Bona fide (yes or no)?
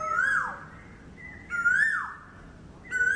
yes